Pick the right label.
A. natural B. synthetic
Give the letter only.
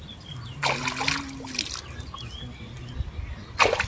A